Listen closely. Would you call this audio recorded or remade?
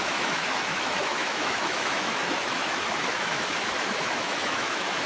remade